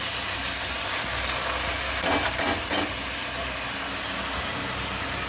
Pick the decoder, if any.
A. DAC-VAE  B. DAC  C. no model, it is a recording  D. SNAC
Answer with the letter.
C